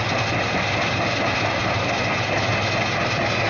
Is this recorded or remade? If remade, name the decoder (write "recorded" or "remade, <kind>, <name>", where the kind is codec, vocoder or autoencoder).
recorded